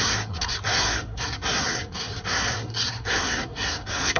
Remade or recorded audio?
remade